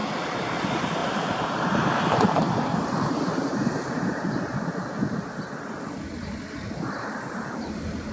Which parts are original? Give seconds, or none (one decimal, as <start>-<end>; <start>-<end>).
0.0-0.6; 3.3-3.9; 4.5-6.9